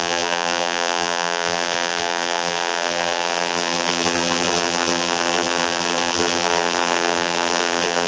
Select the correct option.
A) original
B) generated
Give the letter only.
B